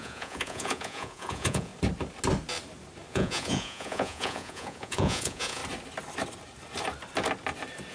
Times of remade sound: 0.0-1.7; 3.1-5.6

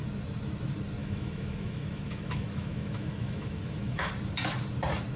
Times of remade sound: 1.0-4.1